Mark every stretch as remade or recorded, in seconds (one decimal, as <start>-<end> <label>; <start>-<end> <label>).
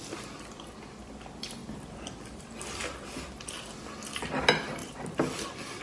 0.0-5.8 recorded